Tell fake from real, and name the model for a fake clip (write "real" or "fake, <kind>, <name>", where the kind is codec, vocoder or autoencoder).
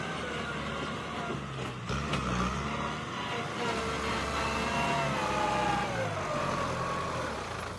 real